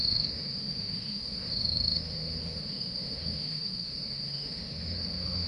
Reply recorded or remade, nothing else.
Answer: remade